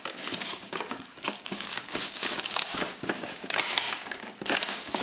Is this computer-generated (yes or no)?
yes